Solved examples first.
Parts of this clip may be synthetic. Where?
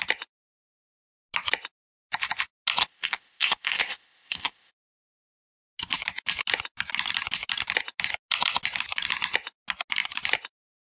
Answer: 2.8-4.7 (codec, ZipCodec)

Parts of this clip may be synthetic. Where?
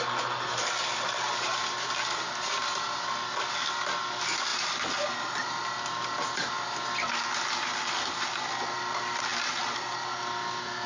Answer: none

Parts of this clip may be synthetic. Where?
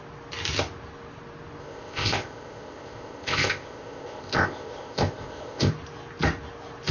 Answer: 1.6-5.7 (codec, ZipCodec)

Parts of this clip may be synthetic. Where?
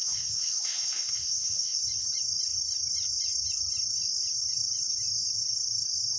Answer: 0.0-1.8 (codec, ZipCodec)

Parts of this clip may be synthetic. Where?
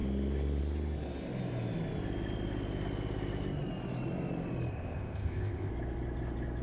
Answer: 4.7-5.7 (codec, ZipCodec)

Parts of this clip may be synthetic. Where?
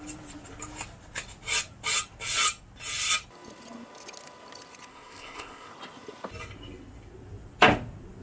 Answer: 4.9-5.7 (codec, ZipCodec)